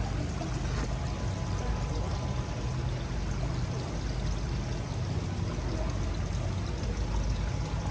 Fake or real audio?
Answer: real